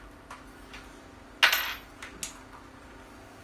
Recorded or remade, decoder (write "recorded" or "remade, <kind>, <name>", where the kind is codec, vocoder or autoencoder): recorded